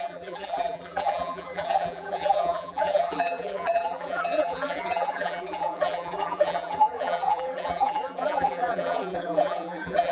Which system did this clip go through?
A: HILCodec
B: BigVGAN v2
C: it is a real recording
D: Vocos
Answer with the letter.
B